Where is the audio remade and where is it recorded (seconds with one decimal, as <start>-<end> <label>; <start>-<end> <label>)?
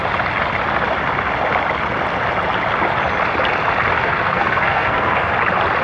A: 0.0-3.9 recorded; 3.9-5.3 remade; 5.3-5.8 recorded